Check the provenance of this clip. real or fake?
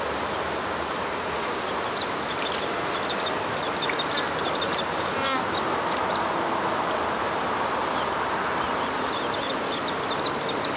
real